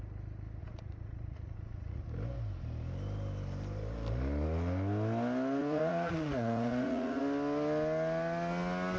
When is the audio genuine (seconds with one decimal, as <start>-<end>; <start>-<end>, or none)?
0.0-0.6; 2.0-5.6; 7.2-9.0